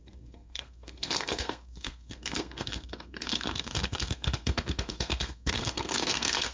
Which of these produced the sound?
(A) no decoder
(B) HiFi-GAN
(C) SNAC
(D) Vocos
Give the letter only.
C